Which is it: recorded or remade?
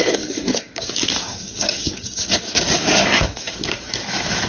remade